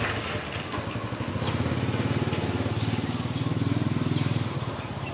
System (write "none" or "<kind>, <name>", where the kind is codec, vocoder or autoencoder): none